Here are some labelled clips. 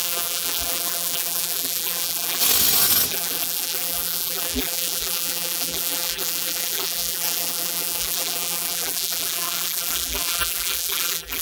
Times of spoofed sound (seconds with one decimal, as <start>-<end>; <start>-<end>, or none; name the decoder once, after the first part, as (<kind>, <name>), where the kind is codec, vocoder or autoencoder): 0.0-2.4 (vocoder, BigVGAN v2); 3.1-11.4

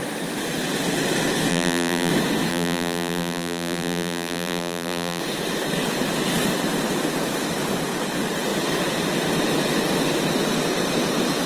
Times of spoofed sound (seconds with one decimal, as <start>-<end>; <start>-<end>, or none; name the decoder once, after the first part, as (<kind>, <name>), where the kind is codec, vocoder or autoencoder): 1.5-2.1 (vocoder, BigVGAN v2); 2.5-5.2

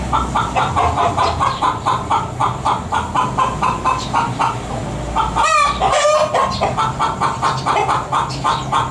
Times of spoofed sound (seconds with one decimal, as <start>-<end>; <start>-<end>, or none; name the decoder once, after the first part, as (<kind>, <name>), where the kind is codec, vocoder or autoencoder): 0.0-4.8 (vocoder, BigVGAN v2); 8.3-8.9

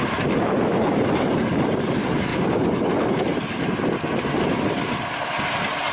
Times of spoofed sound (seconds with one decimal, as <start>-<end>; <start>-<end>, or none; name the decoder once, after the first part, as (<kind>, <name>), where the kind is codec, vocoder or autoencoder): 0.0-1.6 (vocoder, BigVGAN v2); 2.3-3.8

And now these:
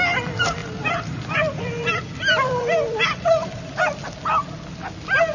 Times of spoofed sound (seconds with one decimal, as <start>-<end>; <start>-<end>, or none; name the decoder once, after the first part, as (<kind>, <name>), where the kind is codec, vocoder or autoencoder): 0.6-3.8 (vocoder, BigVGAN v2)

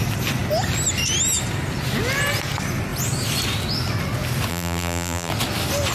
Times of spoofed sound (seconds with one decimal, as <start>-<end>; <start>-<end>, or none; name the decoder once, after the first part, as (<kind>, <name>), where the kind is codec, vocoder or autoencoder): 4.5-5.3 (vocoder, BigVGAN v2)

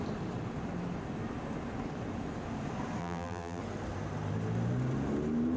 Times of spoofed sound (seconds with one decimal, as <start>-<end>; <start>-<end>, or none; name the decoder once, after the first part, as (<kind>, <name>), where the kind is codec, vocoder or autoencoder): 3.0-3.6 (vocoder, BigVGAN v2)

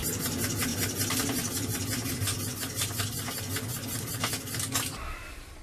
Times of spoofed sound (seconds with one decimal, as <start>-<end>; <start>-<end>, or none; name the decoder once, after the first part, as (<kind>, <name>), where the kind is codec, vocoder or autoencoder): none